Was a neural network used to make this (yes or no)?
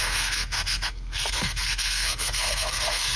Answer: yes